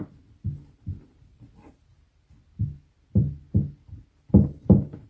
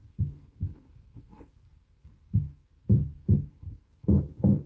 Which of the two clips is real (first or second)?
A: first